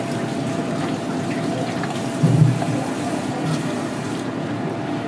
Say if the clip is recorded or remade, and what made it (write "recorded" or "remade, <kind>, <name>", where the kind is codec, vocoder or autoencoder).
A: remade, vocoder, BigVGAN v2